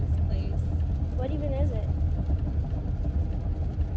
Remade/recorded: recorded